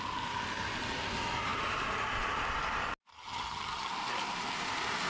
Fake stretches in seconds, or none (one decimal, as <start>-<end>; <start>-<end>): 3.1-3.9